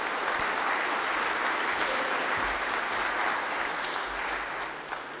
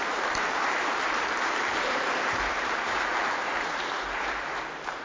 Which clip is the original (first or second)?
first